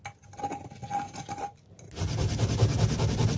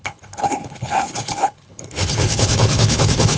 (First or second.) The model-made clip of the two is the second